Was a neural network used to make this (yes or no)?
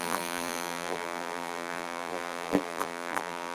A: yes